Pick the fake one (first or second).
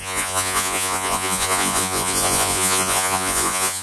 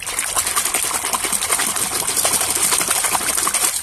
first